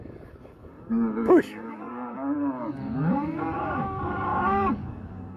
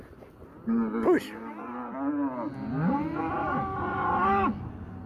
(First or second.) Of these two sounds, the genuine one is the second